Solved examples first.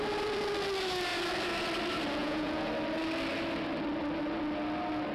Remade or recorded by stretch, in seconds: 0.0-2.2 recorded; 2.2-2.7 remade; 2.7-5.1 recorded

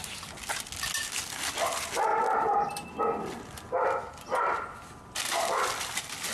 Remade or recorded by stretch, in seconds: 0.0-1.2 recorded; 1.2-6.3 remade

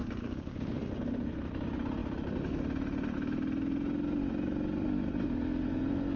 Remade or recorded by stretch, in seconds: 0.0-0.7 remade; 0.7-6.2 recorded

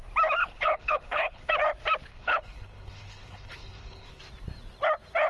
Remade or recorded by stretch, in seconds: 0.0-0.4 recorded; 0.4-1.5 remade; 1.5-2.1 recorded; 2.1-4.2 remade; 4.2-5.3 recorded